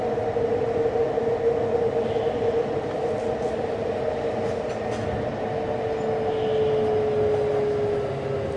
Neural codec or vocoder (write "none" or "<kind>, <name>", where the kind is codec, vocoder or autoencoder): none